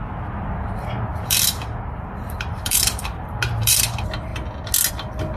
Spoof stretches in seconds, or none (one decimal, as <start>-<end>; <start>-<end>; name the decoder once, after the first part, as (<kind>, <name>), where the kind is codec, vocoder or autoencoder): 1.1-3.8 (vocoder, BigVGAN v2)